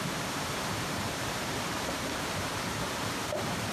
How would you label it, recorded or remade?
remade